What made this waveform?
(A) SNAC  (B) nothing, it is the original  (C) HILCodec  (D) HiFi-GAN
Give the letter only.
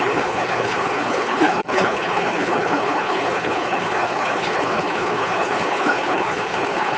C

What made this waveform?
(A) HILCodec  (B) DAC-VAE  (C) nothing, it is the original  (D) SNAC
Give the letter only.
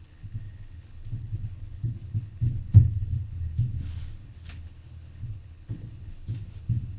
A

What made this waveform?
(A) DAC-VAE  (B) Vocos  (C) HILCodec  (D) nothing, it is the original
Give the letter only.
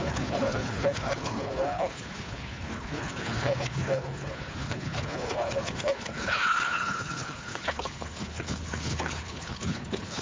C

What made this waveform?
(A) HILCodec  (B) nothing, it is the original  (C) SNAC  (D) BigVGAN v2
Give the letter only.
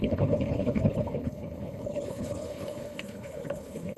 A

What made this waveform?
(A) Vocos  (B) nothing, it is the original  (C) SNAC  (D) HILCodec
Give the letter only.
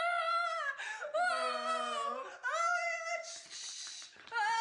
B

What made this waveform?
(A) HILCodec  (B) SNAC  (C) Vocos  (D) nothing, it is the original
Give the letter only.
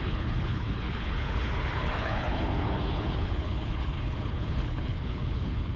A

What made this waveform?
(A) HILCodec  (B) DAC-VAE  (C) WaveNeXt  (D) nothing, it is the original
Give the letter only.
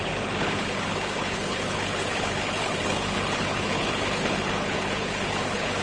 A